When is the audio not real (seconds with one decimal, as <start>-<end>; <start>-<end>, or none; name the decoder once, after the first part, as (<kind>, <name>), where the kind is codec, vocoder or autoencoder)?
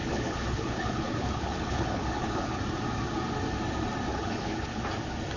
0.0-2.6 (codec, HILCodec); 4.1-4.8